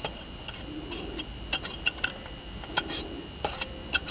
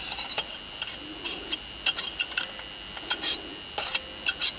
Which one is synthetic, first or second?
first